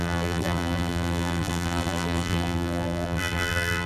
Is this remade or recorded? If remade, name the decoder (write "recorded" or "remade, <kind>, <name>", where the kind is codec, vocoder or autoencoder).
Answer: remade, vocoder, BigVGAN v2